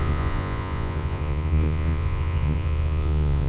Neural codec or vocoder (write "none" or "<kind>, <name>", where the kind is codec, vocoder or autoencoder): vocoder, Vocos